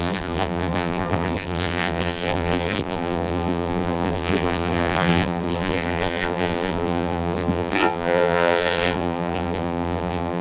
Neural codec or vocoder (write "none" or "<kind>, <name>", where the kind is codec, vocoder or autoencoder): vocoder, BigVGAN v2